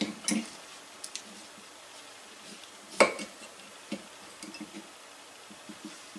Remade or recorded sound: recorded